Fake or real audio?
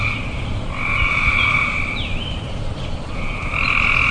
real